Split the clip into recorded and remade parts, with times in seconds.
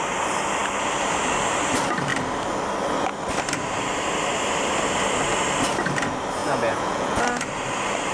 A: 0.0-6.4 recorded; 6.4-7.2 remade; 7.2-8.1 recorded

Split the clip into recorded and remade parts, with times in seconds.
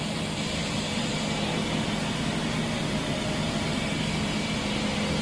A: 0.0-5.2 recorded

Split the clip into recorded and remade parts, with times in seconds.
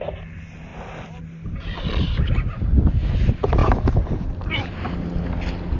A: 0.0-5.8 recorded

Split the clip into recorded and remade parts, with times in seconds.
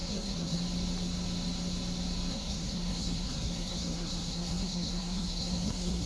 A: 0.0-0.6 remade; 0.6-2.3 recorded; 2.3-6.1 remade